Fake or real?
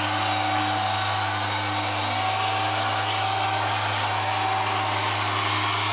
real